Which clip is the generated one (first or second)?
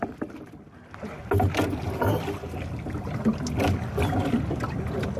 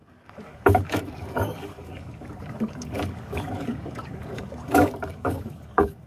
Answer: second